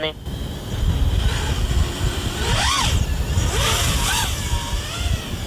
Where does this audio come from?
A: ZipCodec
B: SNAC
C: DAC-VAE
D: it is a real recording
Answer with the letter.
D